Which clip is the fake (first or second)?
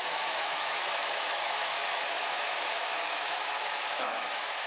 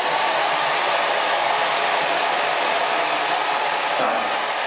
first